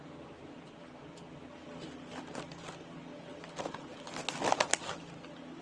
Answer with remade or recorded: recorded